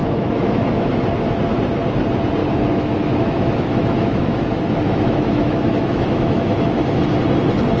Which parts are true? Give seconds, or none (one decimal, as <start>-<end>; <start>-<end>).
0.9-2.4; 7.0-7.8